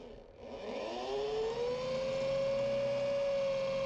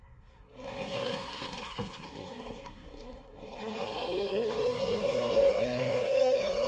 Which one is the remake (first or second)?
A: second